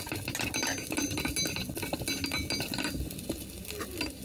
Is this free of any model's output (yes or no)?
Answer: yes